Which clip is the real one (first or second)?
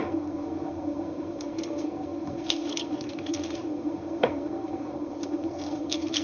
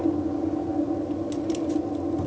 second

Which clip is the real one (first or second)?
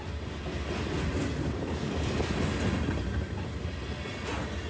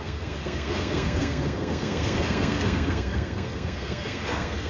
first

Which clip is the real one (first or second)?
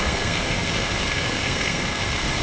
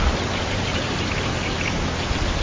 second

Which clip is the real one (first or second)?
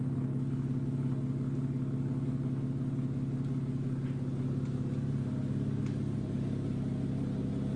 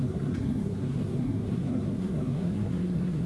first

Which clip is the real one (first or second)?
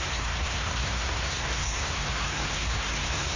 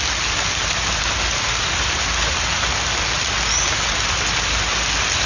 second